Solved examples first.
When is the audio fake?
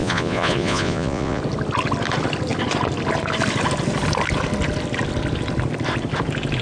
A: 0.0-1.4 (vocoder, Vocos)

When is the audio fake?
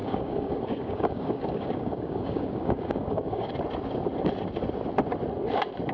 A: 0.0-3.5 (codec, DAC)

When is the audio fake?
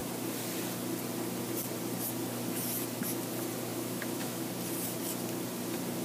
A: 3.7-4.4 (autoencoder, DAC-VAE)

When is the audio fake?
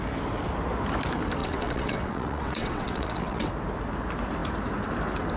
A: 1.4-3.5 (vocoder, WaveNeXt)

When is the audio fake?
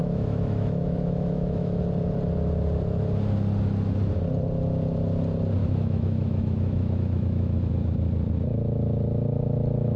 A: 0.0-1.8 (autoencoder, DAC-VAE); 5.6-7.7